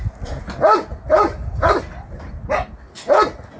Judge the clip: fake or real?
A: real